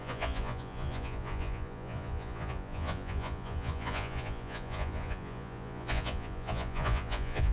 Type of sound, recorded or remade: remade